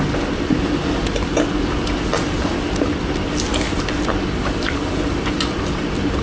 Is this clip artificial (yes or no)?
no